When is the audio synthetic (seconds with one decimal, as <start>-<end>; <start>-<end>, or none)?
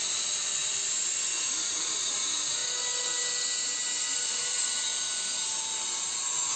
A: 0.0-0.6; 1.4-2.6; 4.1-4.9